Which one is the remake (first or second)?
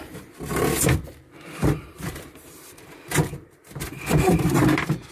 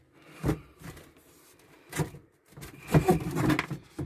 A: first